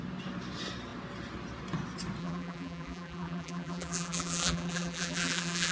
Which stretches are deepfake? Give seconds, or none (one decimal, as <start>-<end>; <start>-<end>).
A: 2.2-5.7